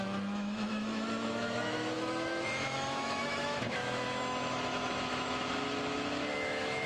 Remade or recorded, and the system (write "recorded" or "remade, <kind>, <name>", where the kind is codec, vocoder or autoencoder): remade, autoencoder, DAC-VAE